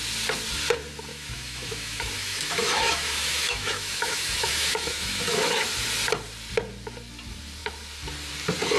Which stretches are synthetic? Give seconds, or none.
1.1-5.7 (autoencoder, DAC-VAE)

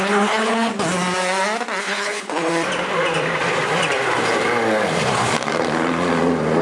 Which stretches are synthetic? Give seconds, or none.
0.0-0.7 (codec, HILCodec); 1.8-2.5

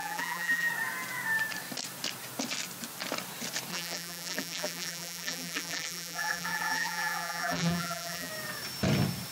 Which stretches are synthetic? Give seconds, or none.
0.0-0.7 (vocoder, BigVGAN v2); 3.7-8.3

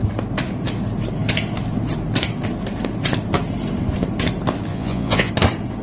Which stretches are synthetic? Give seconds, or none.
4.7-5.3 (vocoder, Vocos)

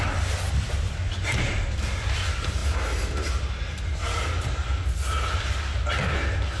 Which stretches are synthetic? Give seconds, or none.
none

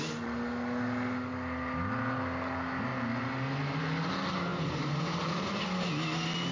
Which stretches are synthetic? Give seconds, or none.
none

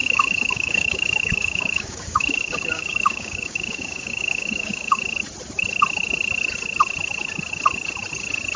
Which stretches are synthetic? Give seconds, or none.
0.0-5.0 (codec, DAC)

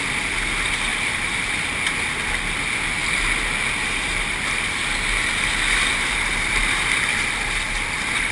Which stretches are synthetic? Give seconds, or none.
0.9-1.4 (vocoder, BigVGAN v2)